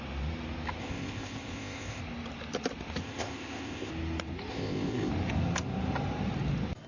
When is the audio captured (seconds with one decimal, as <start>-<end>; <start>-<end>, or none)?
0.0-0.8; 2.0-3.0; 3.9-4.5; 5.1-6.9